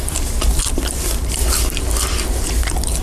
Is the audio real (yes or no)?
yes